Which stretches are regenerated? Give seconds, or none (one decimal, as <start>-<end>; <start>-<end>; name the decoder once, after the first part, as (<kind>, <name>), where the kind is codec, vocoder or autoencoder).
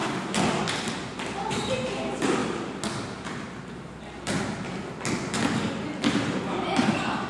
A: 1.5-2.4 (vocoder, BigVGAN v2); 6.1-7.3